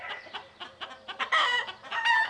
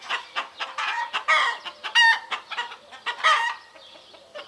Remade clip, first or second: first